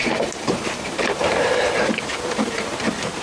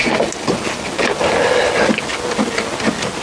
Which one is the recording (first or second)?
second